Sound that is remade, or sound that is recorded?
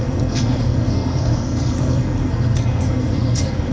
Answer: remade